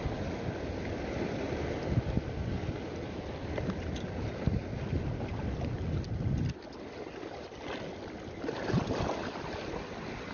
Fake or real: real